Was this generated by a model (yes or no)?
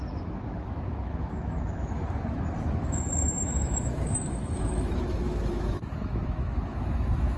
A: yes